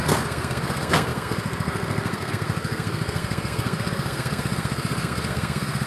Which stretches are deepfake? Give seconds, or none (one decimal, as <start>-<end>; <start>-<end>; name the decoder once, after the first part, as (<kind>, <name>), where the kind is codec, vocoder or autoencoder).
0.0-5.9 (codec, SNAC)